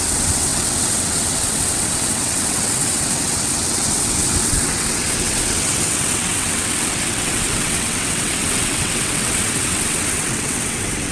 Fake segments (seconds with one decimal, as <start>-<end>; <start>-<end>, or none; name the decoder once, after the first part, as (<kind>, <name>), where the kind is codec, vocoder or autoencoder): 0.0-11.1 (vocoder, WaveNeXt)